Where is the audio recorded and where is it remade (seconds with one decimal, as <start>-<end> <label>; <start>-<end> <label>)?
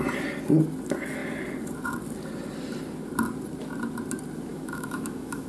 0.0-4.5 recorded; 4.5-5.5 remade